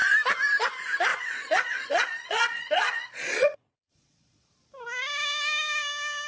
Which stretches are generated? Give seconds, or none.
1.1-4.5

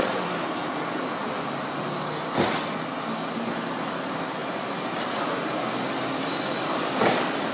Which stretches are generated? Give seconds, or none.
none

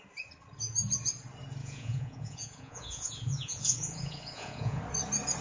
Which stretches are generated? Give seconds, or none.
1.6-4.8

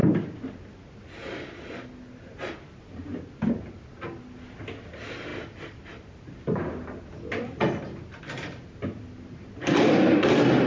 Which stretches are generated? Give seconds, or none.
none